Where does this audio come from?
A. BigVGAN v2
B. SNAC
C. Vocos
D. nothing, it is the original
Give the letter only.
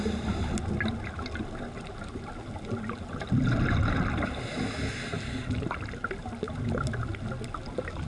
D